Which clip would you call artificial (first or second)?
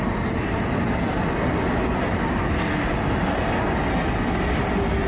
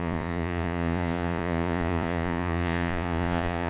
second